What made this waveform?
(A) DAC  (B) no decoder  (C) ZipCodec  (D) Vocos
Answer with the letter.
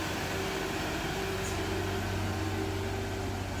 B